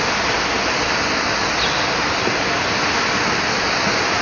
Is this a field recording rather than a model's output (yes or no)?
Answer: yes